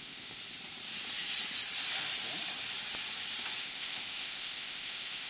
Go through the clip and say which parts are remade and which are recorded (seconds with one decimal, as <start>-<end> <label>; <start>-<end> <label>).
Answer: 0.0-0.4 remade; 0.4-3.6 recorded; 3.6-5.3 remade